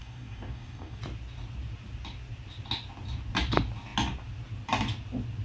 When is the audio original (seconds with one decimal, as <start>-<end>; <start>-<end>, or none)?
1.0-5.4